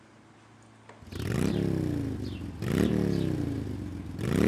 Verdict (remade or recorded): recorded